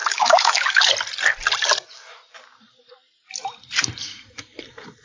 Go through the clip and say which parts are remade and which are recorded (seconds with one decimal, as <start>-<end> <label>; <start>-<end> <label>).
0.0-0.9 remade; 0.9-5.0 recorded